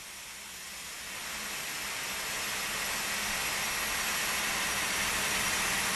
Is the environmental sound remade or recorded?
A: recorded